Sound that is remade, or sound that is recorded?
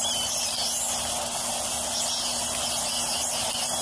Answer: recorded